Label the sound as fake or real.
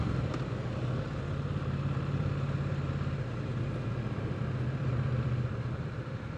fake